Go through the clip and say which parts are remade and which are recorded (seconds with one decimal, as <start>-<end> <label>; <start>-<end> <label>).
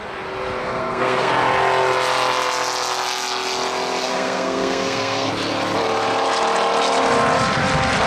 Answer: 0.0-0.6 recorded; 0.6-1.3 remade; 1.3-4.0 recorded; 4.0-5.3 remade; 5.3-8.1 recorded